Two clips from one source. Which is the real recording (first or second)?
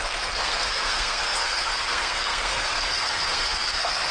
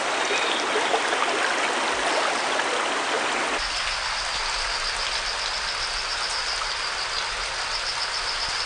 second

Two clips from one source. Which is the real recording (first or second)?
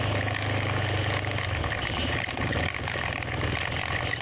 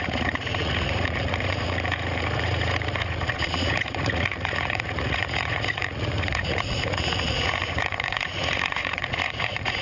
first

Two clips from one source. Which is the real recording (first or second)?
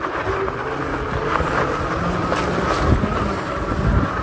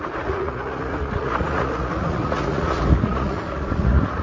first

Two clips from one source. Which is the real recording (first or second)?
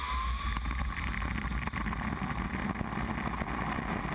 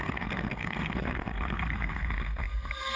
first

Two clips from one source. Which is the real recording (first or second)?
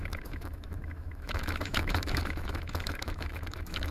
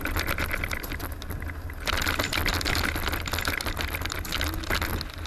second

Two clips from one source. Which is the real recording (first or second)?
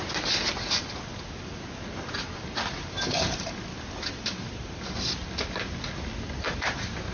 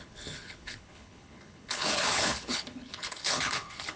first